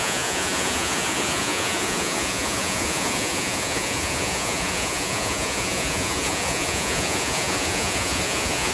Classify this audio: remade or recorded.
remade